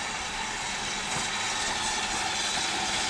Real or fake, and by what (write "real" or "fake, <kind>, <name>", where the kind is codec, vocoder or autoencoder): real